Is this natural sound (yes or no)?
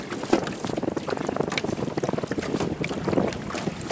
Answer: yes